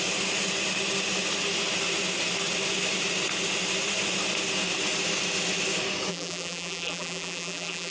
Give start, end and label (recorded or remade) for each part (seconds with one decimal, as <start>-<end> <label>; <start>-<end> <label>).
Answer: 0.0-6.1 recorded; 6.1-7.9 remade